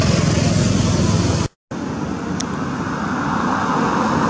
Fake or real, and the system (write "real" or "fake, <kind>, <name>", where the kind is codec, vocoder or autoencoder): real